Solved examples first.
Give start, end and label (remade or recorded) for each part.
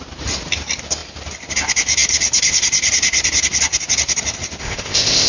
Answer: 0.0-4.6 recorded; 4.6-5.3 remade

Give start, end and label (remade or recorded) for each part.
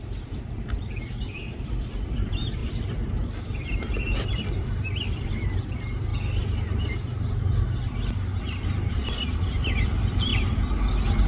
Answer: 0.0-6.1 remade; 6.1-8.9 recorded; 8.9-10.3 remade; 10.3-11.3 recorded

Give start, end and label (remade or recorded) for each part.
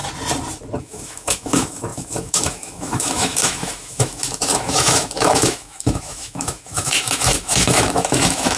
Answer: 0.0-0.8 recorded; 0.8-8.6 remade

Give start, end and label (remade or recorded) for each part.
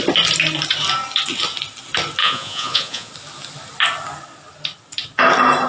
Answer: 0.0-2.2 recorded; 2.2-3.1 remade; 3.1-5.7 recorded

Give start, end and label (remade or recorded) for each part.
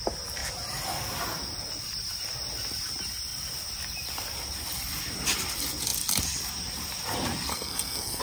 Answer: 0.0-7.5 recorded; 7.5-8.2 remade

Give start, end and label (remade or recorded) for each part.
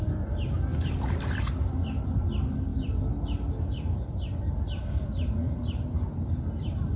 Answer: 0.0-7.0 recorded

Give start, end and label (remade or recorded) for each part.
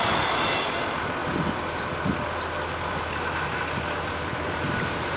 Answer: 0.0-5.2 recorded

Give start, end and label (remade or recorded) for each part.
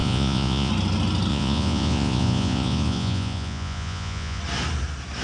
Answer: 0.0-0.7 remade; 0.7-1.3 recorded; 1.3-4.4 remade; 4.4-5.2 recorded